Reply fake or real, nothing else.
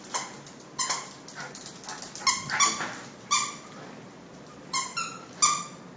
real